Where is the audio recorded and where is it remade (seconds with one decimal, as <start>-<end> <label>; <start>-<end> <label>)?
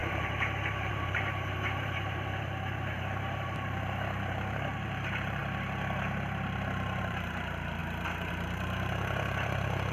0.0-5.4 remade; 5.4-7.0 recorded; 7.0-7.8 remade; 7.8-8.3 recorded; 8.3-9.9 remade